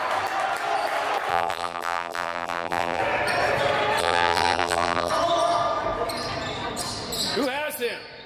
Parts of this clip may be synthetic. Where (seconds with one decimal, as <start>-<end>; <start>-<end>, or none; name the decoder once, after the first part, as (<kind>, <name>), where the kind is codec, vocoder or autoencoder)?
1.3-3.0 (vocoder, BigVGAN v2); 4.0-5.1